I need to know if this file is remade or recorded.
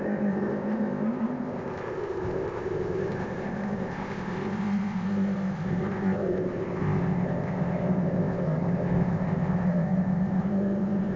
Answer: remade